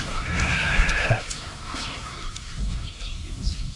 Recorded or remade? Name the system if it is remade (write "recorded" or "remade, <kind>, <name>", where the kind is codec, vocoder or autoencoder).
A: remade, codec, SNAC